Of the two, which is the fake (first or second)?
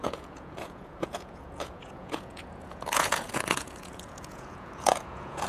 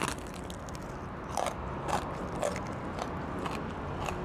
first